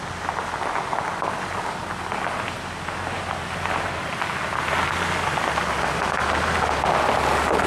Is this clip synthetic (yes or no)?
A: no